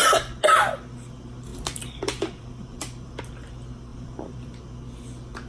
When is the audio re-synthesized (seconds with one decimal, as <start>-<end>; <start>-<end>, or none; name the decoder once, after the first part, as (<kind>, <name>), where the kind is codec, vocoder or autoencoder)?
1.5-3.2 (vocoder, BigVGAN v2); 3.9-4.6

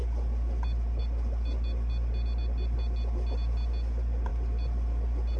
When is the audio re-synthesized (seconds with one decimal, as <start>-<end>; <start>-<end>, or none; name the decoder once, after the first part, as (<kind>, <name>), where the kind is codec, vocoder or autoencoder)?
0.0-1.0 (vocoder, BigVGAN v2); 4.3-5.4

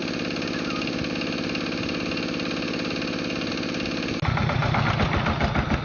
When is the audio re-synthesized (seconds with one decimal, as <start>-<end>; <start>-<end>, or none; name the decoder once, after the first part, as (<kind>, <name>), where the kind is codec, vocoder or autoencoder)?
none

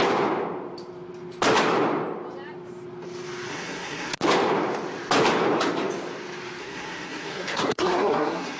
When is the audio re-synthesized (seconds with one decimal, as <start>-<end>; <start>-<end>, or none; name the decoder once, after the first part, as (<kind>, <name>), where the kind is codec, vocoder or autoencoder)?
3.5-4.1 (codec, SNAC); 6.6-8.6

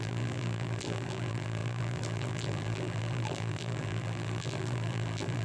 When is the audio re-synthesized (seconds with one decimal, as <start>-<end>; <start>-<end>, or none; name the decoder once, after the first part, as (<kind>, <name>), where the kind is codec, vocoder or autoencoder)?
0.0-5.4 (vocoder, BigVGAN v2)

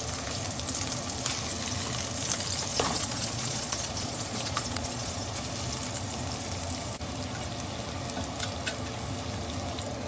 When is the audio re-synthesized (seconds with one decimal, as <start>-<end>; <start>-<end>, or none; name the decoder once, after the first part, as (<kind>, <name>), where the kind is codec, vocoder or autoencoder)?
2.7-5.4 (vocoder, Vocos)